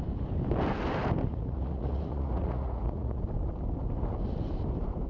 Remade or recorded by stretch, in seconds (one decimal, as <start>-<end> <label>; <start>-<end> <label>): 0.0-1.3 recorded; 1.3-3.2 remade; 3.2-5.1 recorded